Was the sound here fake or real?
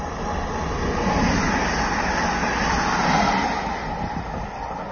real